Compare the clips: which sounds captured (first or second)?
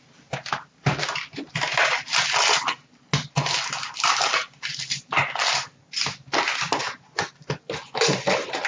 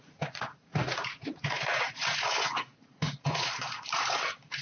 first